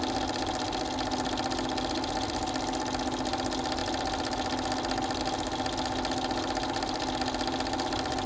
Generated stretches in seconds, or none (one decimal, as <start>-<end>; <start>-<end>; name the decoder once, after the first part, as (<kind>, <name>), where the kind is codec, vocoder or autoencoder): none